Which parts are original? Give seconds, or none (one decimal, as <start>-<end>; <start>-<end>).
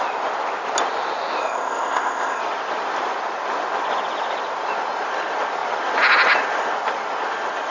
0.0-1.4; 2.4-7.7